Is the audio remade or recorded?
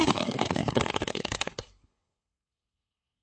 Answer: remade